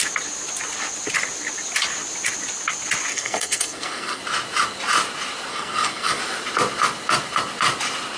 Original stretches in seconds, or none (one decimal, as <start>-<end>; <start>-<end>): 0.0-3.1; 4.2-5.5; 6.2-8.2